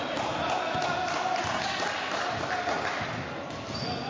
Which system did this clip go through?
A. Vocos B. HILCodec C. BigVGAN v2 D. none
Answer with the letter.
D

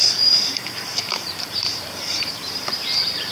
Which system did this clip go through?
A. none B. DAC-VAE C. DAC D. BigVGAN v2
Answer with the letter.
D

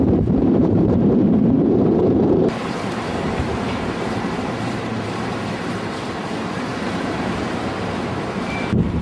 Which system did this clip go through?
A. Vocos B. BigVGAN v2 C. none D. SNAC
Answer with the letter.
B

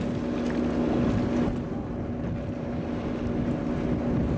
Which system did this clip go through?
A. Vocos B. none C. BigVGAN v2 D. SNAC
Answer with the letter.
B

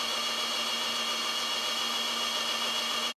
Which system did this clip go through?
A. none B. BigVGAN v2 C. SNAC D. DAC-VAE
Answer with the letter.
A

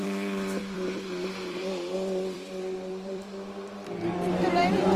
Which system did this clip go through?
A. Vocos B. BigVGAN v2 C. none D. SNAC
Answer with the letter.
B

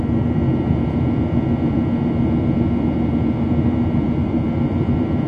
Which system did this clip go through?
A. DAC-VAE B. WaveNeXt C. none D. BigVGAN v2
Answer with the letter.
D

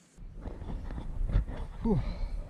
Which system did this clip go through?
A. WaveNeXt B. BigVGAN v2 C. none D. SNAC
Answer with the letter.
B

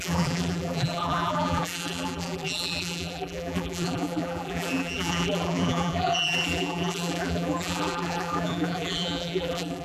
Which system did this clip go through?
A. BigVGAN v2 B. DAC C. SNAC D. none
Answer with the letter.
A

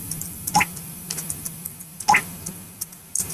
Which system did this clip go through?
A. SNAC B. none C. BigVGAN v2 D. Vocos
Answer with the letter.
B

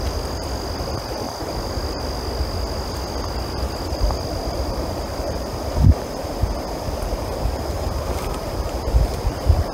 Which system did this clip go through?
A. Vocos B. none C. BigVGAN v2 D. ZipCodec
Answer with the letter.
B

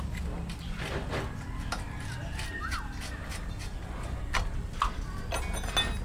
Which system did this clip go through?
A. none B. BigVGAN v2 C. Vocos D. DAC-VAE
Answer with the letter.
A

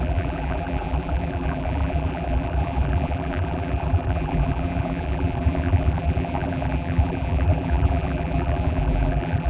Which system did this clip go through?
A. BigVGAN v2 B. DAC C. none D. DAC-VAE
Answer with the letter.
A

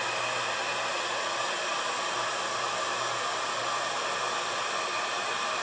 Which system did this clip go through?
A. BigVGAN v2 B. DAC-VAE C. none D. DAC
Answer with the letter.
C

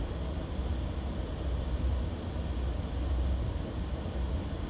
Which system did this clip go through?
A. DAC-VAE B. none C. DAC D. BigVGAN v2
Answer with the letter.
B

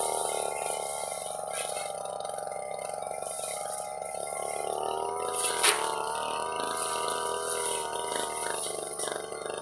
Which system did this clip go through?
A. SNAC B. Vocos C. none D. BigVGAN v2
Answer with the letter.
C